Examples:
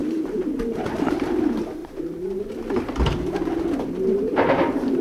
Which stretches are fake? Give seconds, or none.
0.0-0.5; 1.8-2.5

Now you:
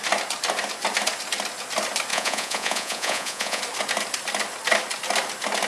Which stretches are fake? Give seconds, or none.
2.1-3.6

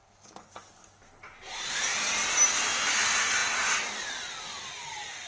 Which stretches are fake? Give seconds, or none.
none

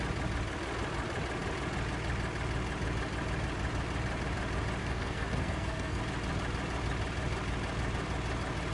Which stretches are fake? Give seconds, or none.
4.8-6.0

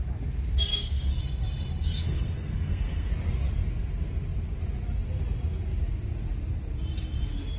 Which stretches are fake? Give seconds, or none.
0.7-1.2; 1.8-3.1

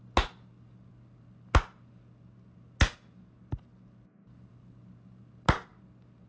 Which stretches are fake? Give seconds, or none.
none

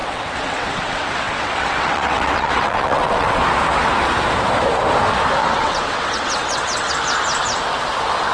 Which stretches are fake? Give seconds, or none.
0.0-3.4; 5.4-6.9

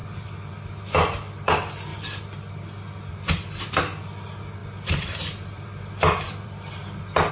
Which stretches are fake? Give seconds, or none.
0.0-0.5; 4.6-7.3